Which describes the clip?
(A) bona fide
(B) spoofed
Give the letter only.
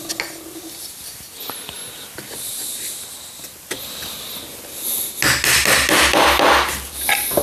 A